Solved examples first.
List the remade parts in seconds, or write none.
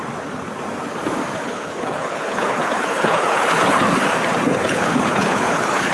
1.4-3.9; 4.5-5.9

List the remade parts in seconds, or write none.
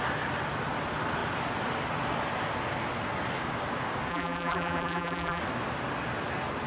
4.1-5.4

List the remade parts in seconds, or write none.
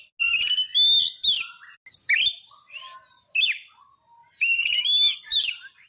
4.2-4.8; 5.3-5.9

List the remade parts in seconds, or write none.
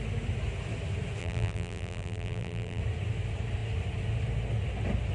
1.2-2.8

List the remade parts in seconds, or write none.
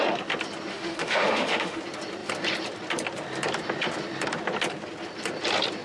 0.7-1.8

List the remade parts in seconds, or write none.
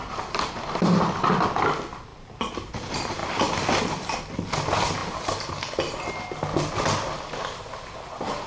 2.1-2.7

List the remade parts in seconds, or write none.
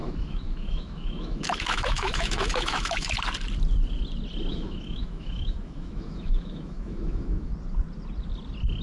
0.0-3.1; 4.5-7.5